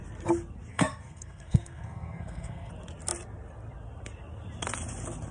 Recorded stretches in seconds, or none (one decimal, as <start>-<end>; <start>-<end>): 0.0-0.7; 2.7-5.3